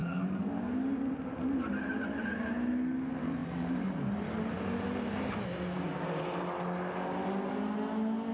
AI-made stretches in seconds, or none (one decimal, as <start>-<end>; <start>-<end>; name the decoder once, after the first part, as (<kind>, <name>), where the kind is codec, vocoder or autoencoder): 0.0-0.5 (codec, SNAC)